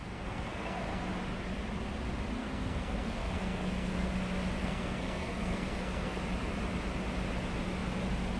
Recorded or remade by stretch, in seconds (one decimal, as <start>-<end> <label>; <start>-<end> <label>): 0.0-1.0 remade; 1.0-2.4 recorded; 2.4-4.1 remade; 4.1-4.6 recorded; 4.6-6.2 remade; 6.2-8.4 recorded